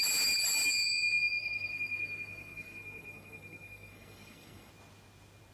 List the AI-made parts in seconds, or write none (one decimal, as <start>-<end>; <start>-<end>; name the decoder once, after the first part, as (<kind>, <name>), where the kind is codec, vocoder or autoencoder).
1.4-4.7 (codec, SNAC)